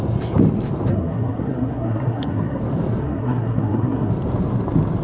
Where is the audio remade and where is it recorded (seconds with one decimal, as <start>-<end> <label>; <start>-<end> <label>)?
0.0-0.9 recorded; 0.9-2.6 remade; 2.6-3.0 recorded; 3.0-4.1 remade; 4.1-5.0 recorded